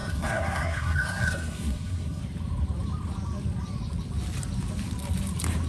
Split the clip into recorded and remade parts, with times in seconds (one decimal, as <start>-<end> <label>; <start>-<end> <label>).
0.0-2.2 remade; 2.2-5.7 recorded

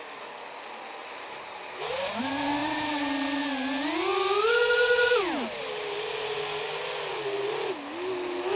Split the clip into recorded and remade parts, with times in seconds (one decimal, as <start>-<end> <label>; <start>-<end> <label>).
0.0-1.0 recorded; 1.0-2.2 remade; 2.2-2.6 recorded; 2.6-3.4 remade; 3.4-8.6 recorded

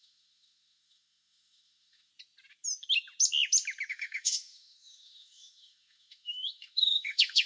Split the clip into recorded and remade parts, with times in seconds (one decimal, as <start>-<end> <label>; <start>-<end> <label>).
0.0-2.1 remade; 2.1-3.9 recorded; 3.9-7.5 remade

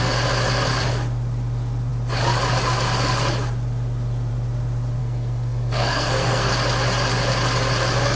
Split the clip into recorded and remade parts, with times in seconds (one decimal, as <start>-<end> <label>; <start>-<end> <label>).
0.0-5.0 recorded; 5.0-6.5 remade; 6.5-8.2 recorded

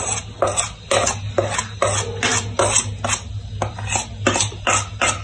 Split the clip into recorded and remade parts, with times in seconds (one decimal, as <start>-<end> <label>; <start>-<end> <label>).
0.0-5.2 recorded